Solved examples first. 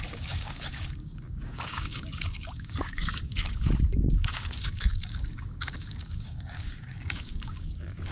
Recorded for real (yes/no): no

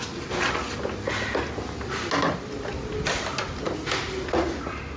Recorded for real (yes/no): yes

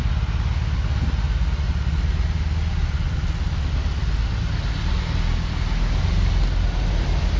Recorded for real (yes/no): yes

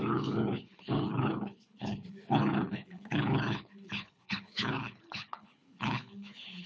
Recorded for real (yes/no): no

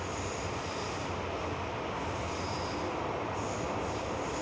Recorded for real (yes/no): yes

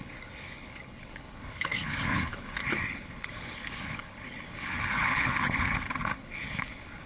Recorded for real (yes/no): no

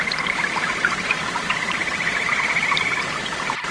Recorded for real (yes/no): yes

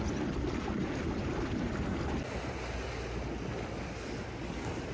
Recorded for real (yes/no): yes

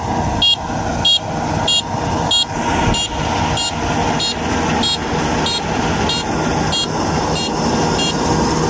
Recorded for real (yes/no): yes